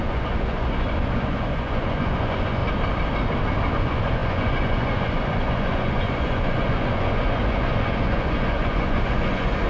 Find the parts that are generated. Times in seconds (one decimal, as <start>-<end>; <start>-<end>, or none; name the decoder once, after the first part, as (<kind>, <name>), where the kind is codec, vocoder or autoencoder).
0.0-2.6 (vocoder, Vocos); 3.7-9.7

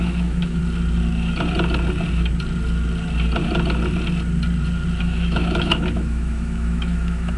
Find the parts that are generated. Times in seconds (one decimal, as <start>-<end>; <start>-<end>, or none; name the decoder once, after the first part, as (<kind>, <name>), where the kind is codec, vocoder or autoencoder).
0.0-0.6 (autoencoder, DAC-VAE); 5.0-7.4

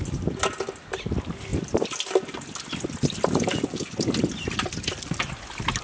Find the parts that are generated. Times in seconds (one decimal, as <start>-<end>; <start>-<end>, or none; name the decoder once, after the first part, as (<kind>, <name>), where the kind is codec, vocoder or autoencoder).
none

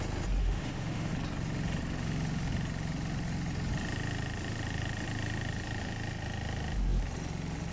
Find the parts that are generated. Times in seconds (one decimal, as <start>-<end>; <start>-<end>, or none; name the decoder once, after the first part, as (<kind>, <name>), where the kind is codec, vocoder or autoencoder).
0.4-1.1 (autoencoder, DAC-VAE)